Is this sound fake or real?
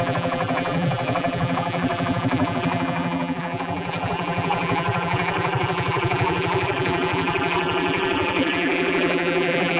fake